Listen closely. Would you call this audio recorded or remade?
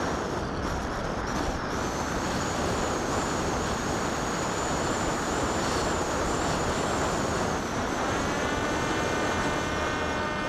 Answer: recorded